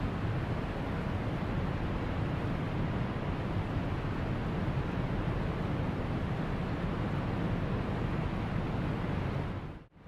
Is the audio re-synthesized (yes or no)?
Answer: no